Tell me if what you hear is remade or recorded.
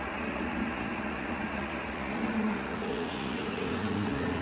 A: remade